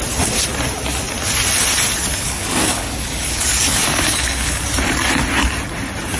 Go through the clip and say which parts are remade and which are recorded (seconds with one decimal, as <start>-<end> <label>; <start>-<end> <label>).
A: 0.0-2.1 recorded; 2.1-4.6 remade; 4.6-6.2 recorded